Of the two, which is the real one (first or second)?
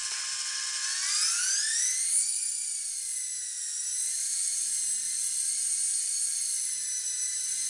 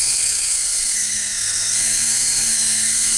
first